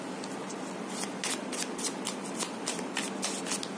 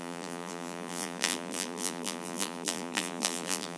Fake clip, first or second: second